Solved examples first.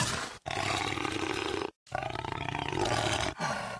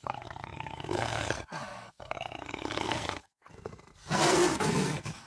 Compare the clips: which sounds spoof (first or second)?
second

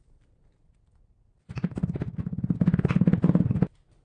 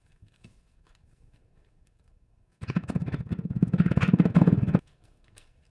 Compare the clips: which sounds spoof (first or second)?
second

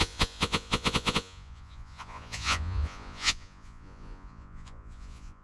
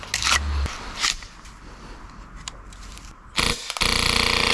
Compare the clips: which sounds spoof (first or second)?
first